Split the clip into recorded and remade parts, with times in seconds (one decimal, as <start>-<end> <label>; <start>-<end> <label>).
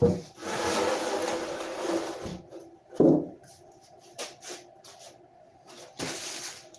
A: 0.0-6.8 recorded